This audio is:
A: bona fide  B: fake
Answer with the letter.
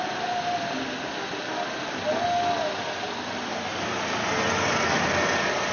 A